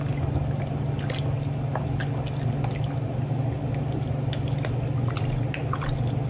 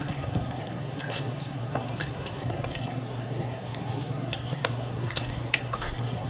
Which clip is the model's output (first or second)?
second